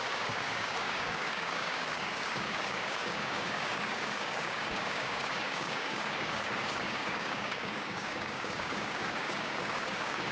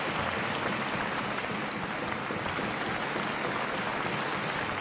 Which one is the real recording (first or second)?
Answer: second